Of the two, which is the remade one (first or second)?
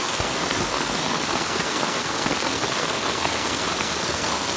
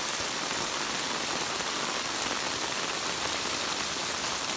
first